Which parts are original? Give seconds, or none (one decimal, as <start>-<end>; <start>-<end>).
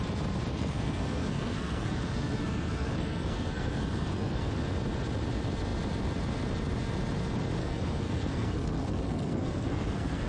0.0-0.5; 4.5-7.6